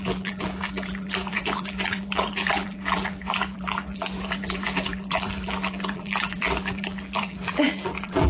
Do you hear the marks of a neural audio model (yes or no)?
yes